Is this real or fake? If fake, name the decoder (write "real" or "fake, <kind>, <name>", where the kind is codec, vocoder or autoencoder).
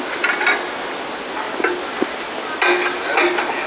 real